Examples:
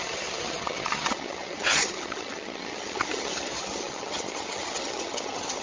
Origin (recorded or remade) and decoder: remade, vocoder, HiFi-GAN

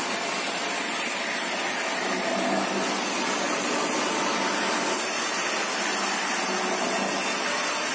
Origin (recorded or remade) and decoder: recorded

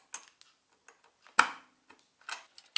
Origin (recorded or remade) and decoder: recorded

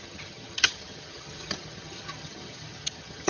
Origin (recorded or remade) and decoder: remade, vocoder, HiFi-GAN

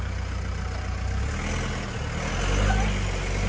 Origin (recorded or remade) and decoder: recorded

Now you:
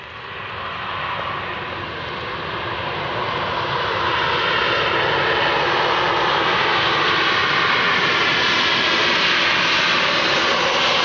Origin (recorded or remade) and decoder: recorded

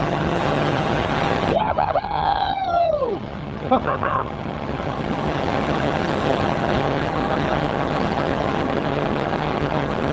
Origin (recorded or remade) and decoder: remade, vocoder, HiFi-GAN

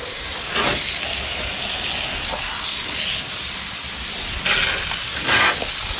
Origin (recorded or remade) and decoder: recorded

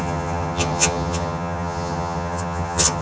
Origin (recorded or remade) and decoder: remade, vocoder, HiFi-GAN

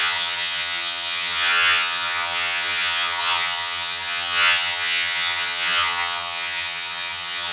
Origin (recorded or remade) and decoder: remade, vocoder, HiFi-GAN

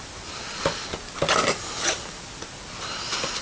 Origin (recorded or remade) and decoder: recorded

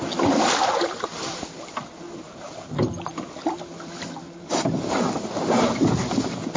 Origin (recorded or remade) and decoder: recorded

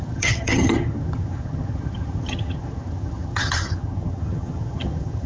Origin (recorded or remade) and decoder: remade, vocoder, HiFi-GAN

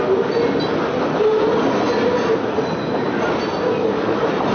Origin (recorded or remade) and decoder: recorded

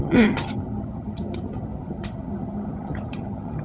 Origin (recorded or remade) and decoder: remade, vocoder, HiFi-GAN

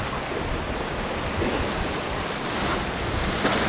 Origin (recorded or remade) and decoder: recorded